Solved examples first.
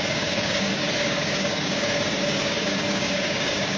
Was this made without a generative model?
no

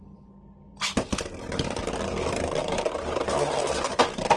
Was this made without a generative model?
yes